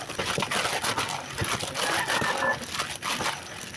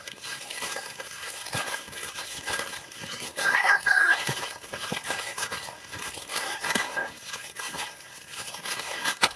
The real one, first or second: first